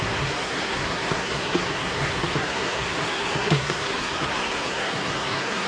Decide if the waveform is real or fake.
fake